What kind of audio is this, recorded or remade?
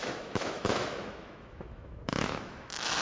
remade